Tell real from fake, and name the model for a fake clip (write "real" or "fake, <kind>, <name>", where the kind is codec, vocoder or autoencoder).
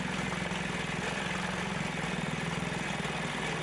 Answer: real